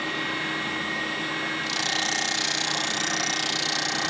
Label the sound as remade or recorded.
recorded